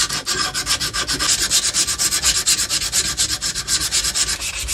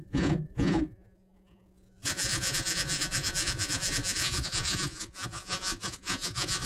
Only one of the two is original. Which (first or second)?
first